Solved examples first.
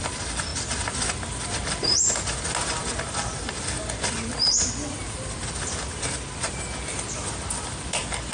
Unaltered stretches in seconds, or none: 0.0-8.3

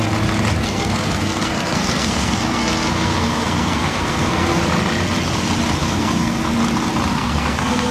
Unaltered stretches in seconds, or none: 0.0-0.6; 4.6-5.8; 6.4-7.1